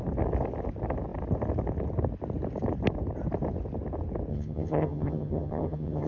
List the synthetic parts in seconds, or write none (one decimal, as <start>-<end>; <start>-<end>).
4.3-6.1